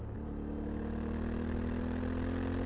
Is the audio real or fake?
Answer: real